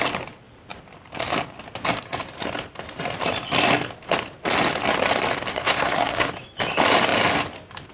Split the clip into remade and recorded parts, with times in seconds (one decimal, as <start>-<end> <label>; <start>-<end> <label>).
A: 0.0-5.5 recorded; 5.5-6.3 remade; 6.3-7.9 recorded